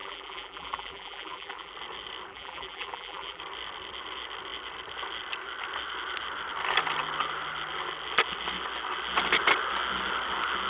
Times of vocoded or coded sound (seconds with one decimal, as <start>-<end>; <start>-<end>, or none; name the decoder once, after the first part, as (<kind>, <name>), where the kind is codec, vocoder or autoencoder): 0.0-1.7 (vocoder, BigVGAN v2); 2.3-3.4